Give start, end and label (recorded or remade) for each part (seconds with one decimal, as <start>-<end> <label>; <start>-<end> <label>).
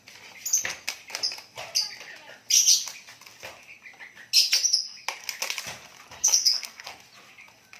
0.0-6.2 recorded; 6.2-7.0 remade; 7.0-7.8 recorded